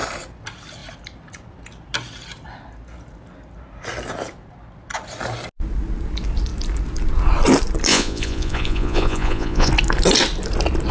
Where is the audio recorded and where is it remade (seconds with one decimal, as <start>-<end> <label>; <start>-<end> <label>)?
0.0-7.9 recorded; 7.9-9.7 remade; 9.7-10.9 recorded